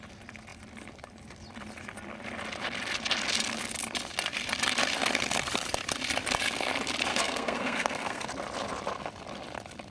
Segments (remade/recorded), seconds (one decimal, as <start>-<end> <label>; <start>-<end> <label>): 0.0-7.1 recorded; 7.1-8.3 remade; 8.3-9.9 recorded